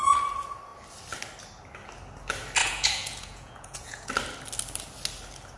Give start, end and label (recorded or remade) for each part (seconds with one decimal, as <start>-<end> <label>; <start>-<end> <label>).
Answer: 0.0-2.6 recorded; 2.6-4.1 remade; 4.1-5.6 recorded